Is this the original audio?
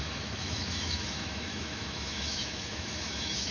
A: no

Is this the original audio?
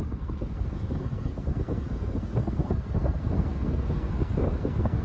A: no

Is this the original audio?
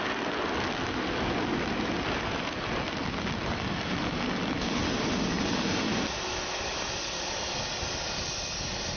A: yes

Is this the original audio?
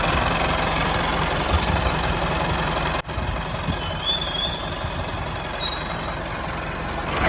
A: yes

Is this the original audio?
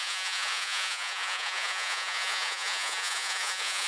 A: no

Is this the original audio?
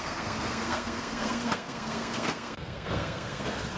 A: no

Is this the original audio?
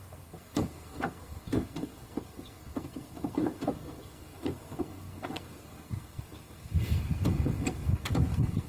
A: no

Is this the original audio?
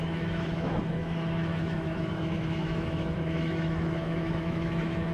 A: no